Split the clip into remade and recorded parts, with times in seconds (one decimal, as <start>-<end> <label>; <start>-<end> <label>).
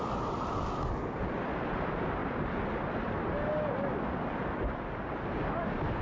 0.0-6.0 recorded